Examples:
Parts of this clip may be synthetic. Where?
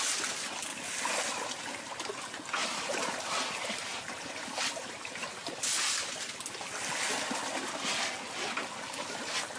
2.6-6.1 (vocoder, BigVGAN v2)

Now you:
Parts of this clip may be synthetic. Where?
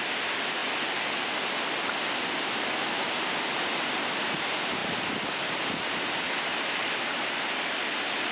none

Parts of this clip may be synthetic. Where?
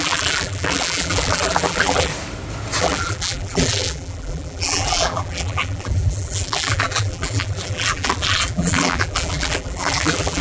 0.0-2.1 (vocoder, BigVGAN v2); 2.8-10.4